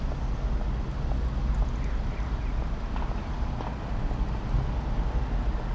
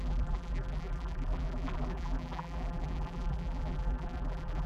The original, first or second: first